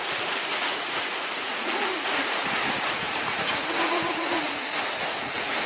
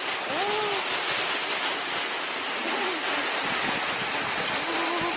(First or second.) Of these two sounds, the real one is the second